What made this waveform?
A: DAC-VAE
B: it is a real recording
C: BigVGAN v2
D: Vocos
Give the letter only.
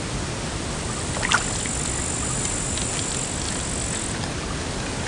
B